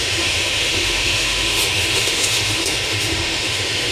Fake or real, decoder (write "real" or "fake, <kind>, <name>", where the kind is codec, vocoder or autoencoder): fake, autoencoder, DAC-VAE